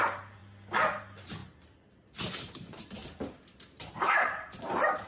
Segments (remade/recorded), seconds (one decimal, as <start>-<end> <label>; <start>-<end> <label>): 0.0-0.4 remade; 0.4-1.0 recorded; 1.0-1.4 remade; 1.4-2.4 recorded; 2.4-3.0 remade; 3.0-3.6 recorded; 3.6-5.1 remade